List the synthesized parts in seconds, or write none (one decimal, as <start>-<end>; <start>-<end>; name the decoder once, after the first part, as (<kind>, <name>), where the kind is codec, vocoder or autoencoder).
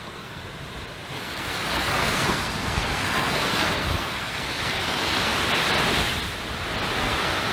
0.0-0.4 (codec, SNAC); 1.2-5.3; 7.0-7.5